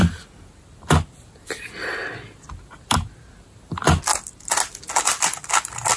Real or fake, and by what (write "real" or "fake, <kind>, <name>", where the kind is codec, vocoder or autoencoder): real